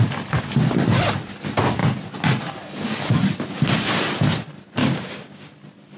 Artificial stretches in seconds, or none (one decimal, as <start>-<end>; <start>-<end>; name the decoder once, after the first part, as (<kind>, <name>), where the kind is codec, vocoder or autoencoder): 4.8-5.5 (codec, DAC)